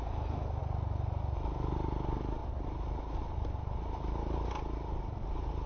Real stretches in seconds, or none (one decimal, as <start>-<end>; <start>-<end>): 0.0-5.7